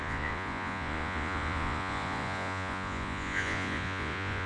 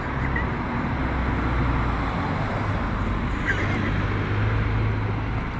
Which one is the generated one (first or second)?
first